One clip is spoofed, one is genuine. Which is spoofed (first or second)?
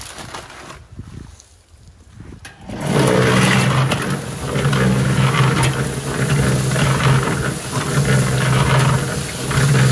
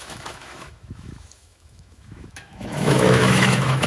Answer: second